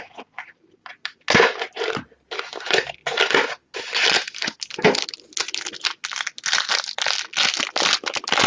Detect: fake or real real